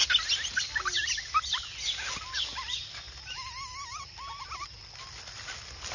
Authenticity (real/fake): real